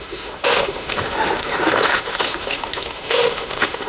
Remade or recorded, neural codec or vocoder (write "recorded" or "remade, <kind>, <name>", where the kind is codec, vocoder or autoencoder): remade, autoencoder, DAC-VAE